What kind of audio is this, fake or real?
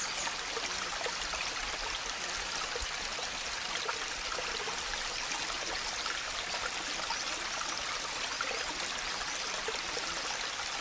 real